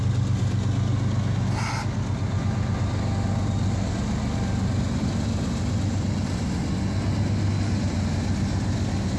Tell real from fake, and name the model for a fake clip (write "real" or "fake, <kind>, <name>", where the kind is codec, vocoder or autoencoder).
real